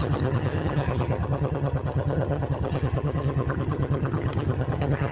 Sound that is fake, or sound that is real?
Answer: fake